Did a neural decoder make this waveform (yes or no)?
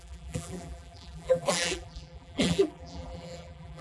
yes